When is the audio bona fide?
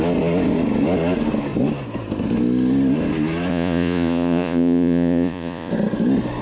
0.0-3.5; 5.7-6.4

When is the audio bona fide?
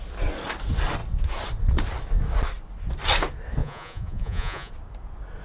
0.0-3.6; 4.7-5.4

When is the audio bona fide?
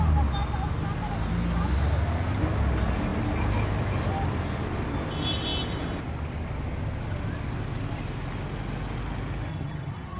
0.0-9.5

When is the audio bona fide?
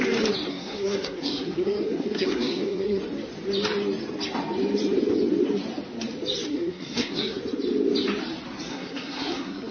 0.0-0.5; 3.0-6.5; 7.4-8.7